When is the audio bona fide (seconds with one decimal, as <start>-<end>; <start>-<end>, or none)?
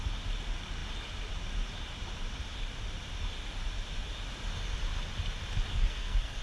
0.0-5.7